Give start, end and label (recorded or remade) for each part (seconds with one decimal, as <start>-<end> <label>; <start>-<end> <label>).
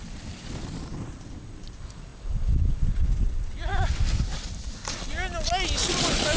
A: 0.0-2.1 remade; 2.1-2.6 recorded; 2.6-3.7 remade; 3.7-5.9 recorded; 5.9-6.4 remade